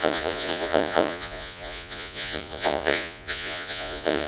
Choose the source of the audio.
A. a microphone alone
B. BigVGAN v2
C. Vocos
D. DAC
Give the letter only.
C